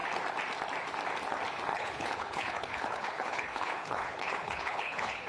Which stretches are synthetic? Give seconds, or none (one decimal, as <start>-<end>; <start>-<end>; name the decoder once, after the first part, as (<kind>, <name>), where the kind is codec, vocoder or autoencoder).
1.7-5.3 (codec, HILCodec)